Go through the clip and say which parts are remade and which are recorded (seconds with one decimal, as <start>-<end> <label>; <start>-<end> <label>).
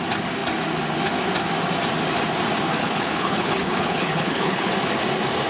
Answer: 0.0-2.8 recorded; 2.8-4.7 remade; 4.7-5.5 recorded